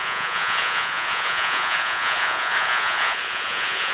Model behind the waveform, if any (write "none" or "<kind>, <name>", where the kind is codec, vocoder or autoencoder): vocoder, Vocos